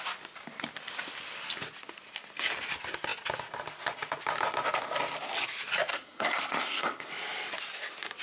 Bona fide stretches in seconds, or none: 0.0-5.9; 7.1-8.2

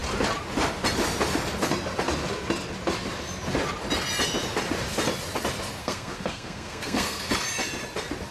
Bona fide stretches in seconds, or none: 0.0-5.8; 7.3-8.3

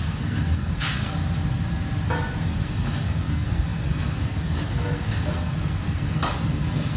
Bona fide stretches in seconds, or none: 1.2-2.4

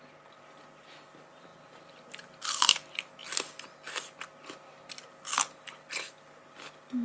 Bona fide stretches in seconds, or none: 0.0-7.0

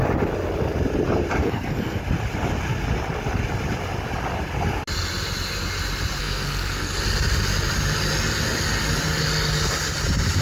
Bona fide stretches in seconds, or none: 0.0-1.4; 2.0-6.2; 6.9-10.4

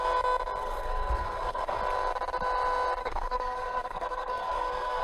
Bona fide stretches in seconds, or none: 0.0-0.6; 1.8-3.0

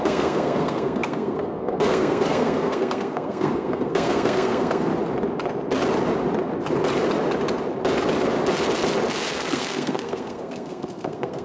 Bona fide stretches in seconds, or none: 4.9-9.3